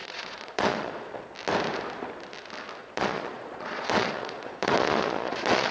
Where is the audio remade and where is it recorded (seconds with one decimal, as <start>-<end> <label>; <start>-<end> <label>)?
0.0-1.2 remade; 1.2-2.8 recorded; 2.8-5.7 remade